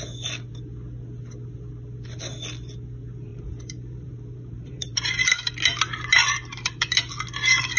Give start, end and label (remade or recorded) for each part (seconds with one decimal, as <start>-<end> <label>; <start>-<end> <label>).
0.0-3.3 recorded; 3.3-5.5 remade; 5.5-6.4 recorded; 6.4-7.0 remade; 7.0-7.8 recorded